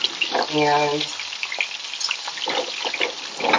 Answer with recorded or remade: recorded